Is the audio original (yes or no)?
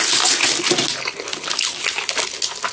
yes